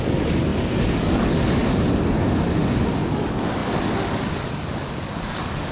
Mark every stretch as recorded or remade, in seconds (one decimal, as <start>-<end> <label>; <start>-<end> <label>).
0.0-1.6 remade; 1.6-2.9 recorded; 2.9-5.7 remade